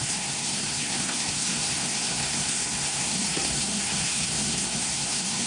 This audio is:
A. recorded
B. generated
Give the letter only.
B